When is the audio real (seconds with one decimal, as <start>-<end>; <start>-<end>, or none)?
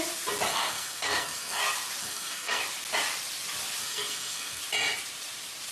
0.0-0.5; 1.6-2.0; 2.6-3.8; 4.6-5.7